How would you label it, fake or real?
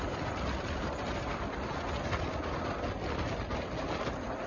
real